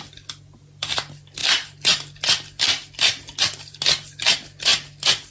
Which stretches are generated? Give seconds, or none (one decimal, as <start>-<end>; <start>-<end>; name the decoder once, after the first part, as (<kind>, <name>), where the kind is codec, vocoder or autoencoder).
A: none